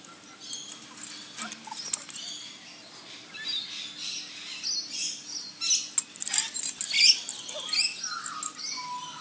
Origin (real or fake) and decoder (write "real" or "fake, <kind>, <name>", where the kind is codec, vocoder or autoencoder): real